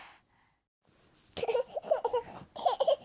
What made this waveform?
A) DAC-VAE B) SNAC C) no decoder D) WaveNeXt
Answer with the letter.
C